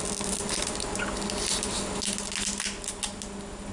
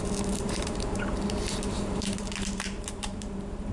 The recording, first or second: first